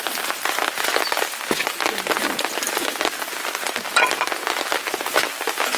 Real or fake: real